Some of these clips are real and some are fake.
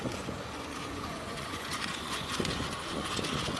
fake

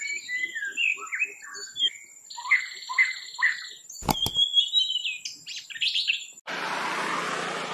real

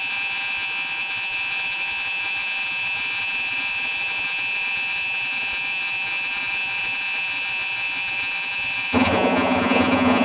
fake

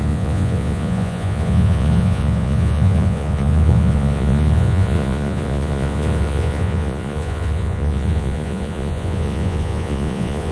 fake